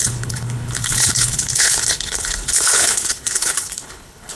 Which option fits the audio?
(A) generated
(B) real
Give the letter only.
A